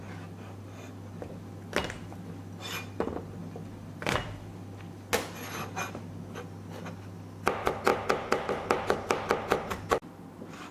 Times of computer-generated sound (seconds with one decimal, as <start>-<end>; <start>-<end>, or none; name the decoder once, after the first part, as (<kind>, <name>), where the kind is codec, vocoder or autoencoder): none